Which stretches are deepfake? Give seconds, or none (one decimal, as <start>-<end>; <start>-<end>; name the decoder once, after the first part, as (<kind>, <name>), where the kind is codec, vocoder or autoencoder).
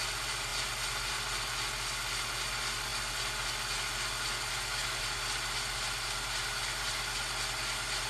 none